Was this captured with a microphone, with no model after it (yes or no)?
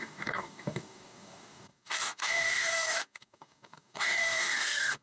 no